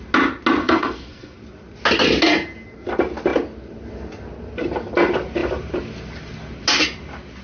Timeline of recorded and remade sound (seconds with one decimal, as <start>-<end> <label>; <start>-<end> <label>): 0.0-0.6 recorded; 0.6-1.4 remade; 1.4-7.4 recorded